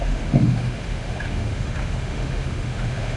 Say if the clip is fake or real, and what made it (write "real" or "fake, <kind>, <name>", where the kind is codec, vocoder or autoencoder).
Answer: fake, autoencoder, DAC-VAE